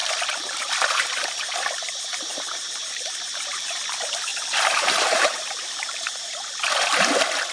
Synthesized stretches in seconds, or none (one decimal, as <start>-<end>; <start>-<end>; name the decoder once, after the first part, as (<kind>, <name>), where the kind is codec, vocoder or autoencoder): 0.0-0.7 (vocoder, BigVGAN v2); 2.1-3.8; 4.3-6.6